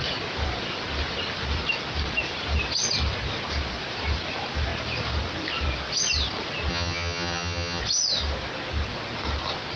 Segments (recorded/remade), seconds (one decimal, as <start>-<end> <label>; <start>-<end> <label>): 0.0-6.7 recorded; 6.7-7.8 remade; 7.8-9.8 recorded